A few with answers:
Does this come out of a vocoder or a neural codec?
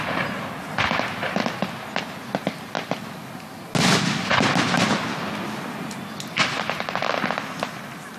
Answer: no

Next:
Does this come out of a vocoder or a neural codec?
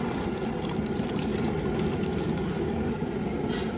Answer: no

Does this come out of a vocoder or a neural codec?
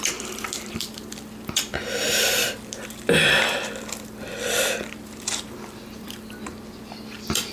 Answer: yes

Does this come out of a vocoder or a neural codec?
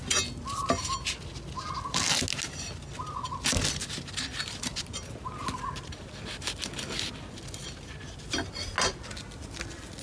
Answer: no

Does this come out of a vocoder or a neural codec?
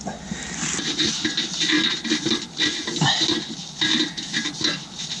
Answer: no